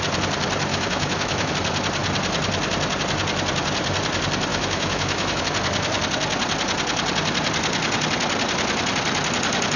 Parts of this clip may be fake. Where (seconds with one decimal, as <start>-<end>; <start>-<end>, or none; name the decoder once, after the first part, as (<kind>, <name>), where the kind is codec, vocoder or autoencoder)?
0.7-1.5 (autoencoder, DAC-VAE); 4.5-5.4

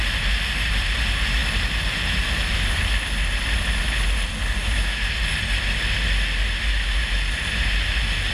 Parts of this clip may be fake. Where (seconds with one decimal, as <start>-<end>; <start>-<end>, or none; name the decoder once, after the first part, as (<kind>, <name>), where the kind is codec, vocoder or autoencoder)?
4.6-5.1 (autoencoder, DAC-VAE)

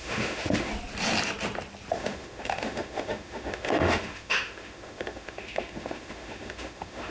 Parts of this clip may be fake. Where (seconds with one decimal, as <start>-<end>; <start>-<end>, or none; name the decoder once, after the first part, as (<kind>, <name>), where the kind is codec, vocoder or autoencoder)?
0.0-0.7 (autoencoder, DAC-VAE); 1.9-7.1

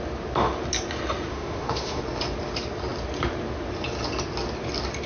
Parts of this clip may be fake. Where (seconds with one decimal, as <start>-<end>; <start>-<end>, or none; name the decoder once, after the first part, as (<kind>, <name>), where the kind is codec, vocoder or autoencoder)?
1.3-2.0 (autoencoder, DAC-VAE)